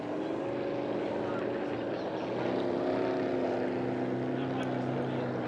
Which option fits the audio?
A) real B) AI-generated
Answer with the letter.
A